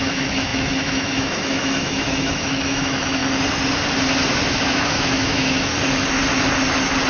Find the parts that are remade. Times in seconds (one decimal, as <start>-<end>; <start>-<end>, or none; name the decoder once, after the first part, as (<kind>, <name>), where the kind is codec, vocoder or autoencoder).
0.0-3.2 (autoencoder, DAC-VAE); 4.6-5.7